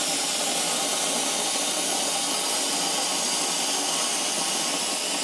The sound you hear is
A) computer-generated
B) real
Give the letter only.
B